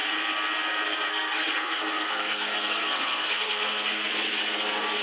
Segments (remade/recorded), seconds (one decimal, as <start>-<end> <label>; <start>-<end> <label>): 0.0-1.1 recorded; 1.1-4.1 remade; 4.1-5.0 recorded